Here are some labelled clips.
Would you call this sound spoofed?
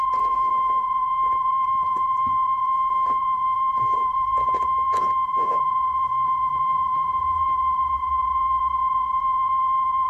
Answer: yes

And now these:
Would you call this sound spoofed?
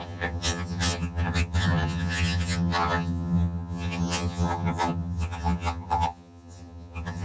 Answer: yes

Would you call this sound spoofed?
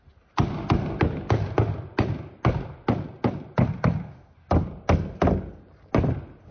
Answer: no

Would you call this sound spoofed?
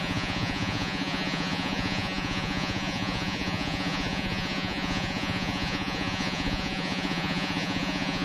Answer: yes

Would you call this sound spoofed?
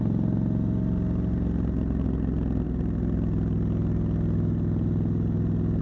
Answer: no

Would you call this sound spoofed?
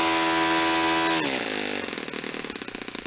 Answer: no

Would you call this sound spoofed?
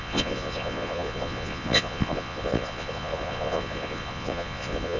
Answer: yes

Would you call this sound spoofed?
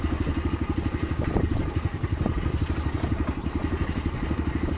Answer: no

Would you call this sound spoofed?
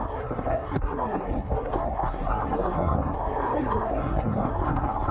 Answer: yes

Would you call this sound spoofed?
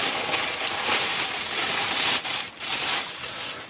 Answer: no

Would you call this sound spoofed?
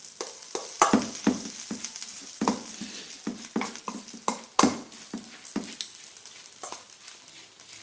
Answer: no